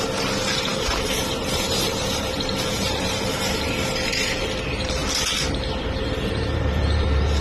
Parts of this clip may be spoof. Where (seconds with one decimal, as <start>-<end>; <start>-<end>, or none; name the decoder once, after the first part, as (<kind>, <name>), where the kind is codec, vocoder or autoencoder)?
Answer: 0.0-5.0 (vocoder, BigVGAN v2); 5.9-7.4